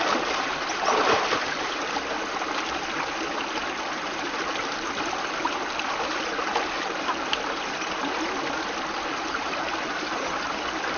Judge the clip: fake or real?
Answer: real